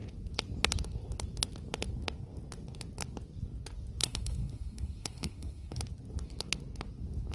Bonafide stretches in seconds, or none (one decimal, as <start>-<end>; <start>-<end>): 0.0-4.0; 5.8-7.3